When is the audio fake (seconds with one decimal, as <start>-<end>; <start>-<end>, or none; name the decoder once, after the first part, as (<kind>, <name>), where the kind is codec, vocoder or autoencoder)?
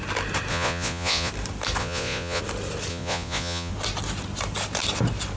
0.5-1.3 (vocoder, Vocos); 1.8-2.4; 2.9-3.7